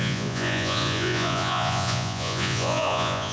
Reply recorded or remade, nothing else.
remade